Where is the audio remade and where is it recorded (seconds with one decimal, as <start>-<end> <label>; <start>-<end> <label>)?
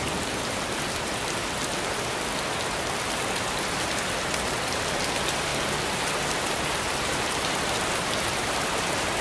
0.0-9.2 recorded